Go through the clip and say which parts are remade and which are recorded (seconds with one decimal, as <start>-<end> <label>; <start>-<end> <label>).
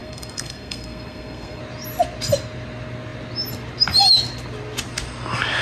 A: 0.0-1.6 remade; 1.6-5.6 recorded